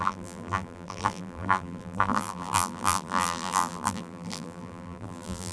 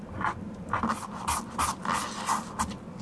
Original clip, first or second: second